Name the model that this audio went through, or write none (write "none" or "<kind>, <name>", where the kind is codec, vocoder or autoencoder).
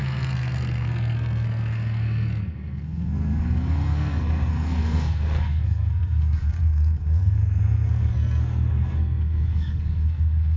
codec, SNAC